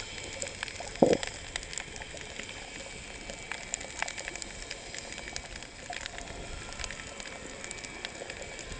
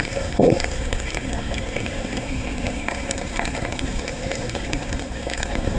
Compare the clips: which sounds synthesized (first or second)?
second